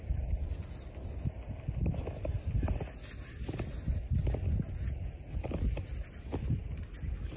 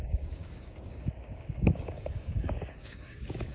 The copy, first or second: second